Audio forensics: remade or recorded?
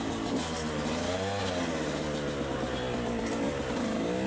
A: recorded